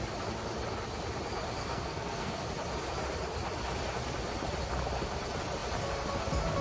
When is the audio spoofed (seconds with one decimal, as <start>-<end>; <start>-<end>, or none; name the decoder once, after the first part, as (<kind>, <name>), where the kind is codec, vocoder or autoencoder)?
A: 1.6-2.4 (codec, SNAC)